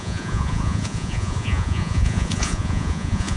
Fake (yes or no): yes